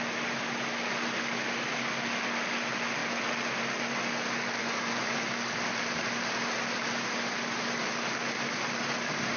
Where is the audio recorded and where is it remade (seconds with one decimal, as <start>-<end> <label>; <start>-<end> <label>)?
0.0-4.6 recorded; 4.6-5.2 remade; 5.2-9.4 recorded